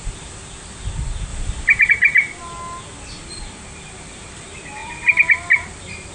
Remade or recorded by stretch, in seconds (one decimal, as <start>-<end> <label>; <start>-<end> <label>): 0.0-6.1 recorded